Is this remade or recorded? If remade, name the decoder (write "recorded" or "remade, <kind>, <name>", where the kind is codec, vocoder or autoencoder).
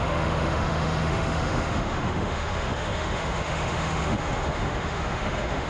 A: remade, autoencoder, DAC-VAE